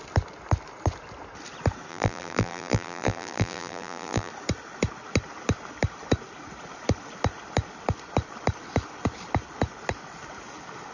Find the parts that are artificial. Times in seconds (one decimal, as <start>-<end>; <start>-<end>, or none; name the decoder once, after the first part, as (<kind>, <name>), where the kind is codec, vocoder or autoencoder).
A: 1.9-4.3 (vocoder, BigVGAN v2)